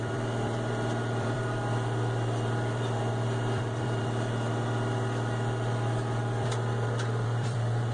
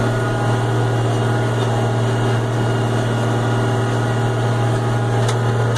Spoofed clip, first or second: first